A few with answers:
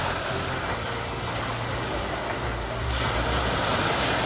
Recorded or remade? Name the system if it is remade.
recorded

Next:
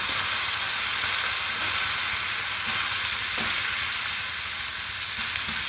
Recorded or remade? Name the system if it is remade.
recorded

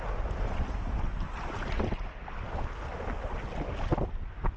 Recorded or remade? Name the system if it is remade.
recorded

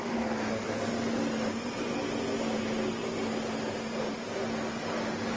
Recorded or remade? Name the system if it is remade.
recorded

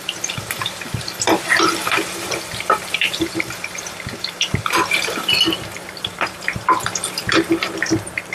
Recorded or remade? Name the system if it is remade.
remade, vocoder, BigVGAN v2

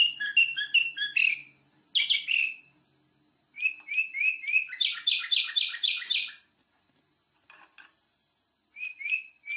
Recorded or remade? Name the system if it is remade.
recorded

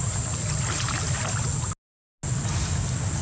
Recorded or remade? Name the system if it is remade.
recorded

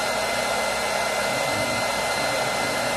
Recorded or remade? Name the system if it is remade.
recorded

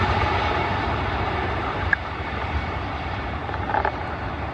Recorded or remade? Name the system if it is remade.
remade, vocoder, BigVGAN v2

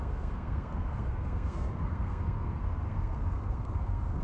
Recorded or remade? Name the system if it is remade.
remade, codec, SNAC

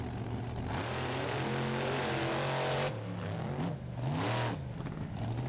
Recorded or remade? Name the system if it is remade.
recorded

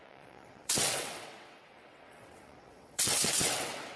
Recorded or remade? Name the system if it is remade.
remade, vocoder, WaveNeXt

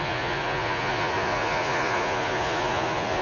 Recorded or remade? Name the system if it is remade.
remade, vocoder, Vocos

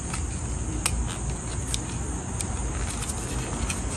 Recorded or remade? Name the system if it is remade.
recorded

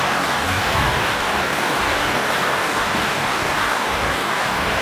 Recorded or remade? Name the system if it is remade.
remade, codec, DAC